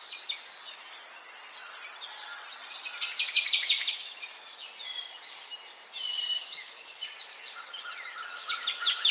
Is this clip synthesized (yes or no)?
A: no